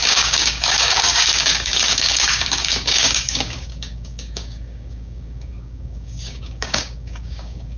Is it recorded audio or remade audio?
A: remade